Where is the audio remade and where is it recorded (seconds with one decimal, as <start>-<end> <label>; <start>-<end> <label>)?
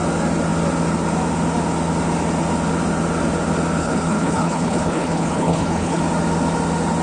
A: 0.0-3.8 recorded; 3.8-6.0 remade; 6.0-7.0 recorded